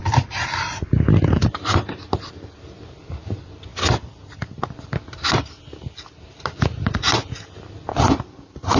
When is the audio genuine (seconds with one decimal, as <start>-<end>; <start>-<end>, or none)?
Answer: 0.0-8.8